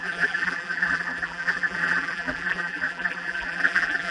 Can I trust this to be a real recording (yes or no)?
no